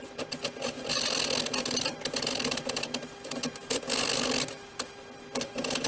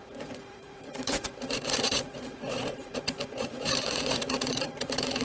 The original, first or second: first